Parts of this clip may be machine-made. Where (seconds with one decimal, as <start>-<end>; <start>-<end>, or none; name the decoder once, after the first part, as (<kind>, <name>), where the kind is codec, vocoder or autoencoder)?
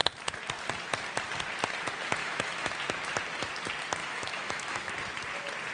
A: 2.2-2.7 (autoencoder, DAC-VAE); 4.0-4.9